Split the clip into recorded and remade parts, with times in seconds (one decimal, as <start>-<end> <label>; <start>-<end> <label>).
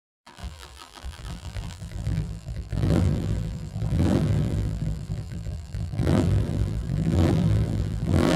0.0-8.4 remade